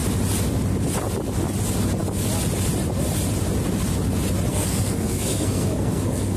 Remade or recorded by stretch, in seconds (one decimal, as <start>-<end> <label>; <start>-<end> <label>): 0.0-4.5 recorded; 4.5-6.4 remade